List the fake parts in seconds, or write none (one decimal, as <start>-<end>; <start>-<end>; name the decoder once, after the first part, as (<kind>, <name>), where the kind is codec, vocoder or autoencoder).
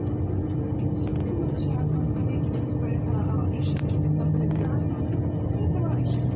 1.1-1.6 (vocoder, Vocos)